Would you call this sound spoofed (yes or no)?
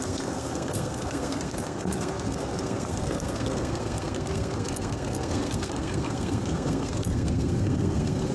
yes